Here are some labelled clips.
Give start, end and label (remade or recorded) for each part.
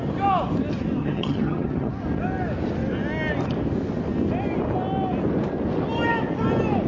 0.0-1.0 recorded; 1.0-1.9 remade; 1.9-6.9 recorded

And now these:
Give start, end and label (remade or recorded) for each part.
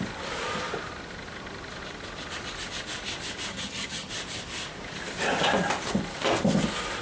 0.0-3.5 recorded; 3.5-4.1 remade; 4.1-7.0 recorded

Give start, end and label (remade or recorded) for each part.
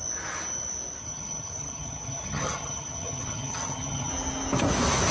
0.0-1.0 recorded; 1.0-4.1 remade; 4.1-5.1 recorded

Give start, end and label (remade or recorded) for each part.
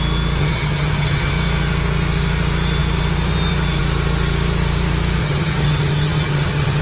0.0-0.4 recorded; 0.4-1.3 remade; 1.3-5.2 recorded; 5.2-6.8 remade